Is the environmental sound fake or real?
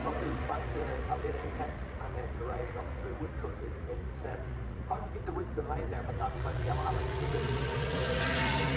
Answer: fake